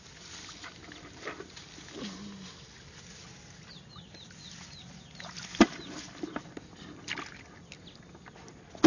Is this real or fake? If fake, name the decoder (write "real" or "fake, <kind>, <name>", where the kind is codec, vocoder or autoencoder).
real